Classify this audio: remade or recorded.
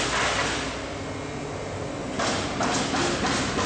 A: recorded